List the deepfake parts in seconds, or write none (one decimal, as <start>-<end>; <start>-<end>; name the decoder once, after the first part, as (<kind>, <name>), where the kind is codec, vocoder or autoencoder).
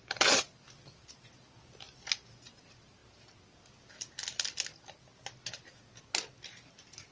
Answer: none